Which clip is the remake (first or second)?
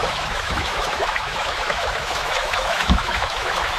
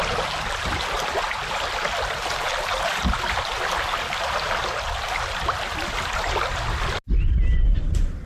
first